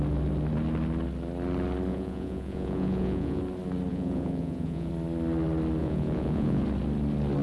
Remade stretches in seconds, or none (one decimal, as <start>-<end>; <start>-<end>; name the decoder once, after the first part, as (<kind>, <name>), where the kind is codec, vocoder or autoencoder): 1.9-3.4 (vocoder, Vocos); 3.9-4.9; 5.8-6.6